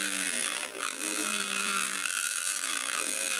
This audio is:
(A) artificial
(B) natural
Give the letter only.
A